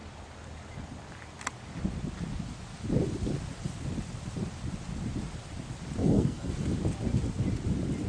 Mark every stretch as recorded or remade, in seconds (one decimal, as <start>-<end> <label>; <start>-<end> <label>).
0.0-6.0 recorded; 6.0-6.5 remade; 6.5-8.1 recorded